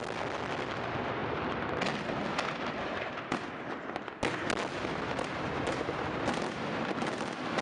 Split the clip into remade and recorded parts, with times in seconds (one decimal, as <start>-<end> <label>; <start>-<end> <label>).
0.0-4.8 recorded; 4.8-6.6 remade; 6.6-7.6 recorded